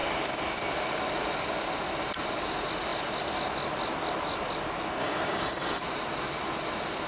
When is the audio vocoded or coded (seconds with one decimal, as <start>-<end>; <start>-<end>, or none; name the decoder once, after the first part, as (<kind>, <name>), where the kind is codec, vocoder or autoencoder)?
5.0-5.8 (codec, DAC)